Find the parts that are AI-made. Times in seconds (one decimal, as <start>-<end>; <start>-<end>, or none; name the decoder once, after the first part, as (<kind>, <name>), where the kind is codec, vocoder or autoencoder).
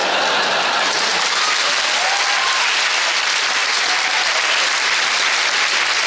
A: none